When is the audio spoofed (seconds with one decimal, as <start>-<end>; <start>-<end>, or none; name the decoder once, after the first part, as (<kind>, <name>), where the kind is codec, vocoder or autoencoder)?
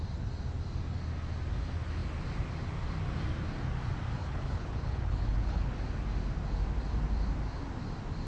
4.2-5.7 (codec, HILCodec)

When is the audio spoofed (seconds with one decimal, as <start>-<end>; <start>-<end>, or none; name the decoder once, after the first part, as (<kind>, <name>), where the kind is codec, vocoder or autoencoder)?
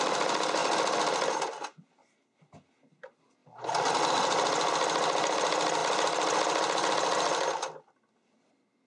none